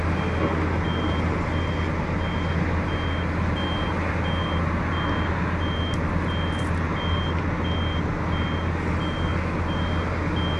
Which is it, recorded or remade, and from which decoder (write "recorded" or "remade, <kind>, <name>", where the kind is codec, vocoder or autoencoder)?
recorded